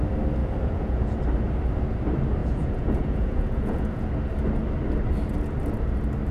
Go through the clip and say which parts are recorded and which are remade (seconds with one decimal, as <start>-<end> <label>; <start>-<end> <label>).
0.0-0.4 recorded; 0.4-1.2 remade; 1.2-2.4 recorded; 2.4-4.1 remade; 4.1-6.3 recorded